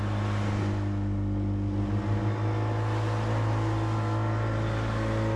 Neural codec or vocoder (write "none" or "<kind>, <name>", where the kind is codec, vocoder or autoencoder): none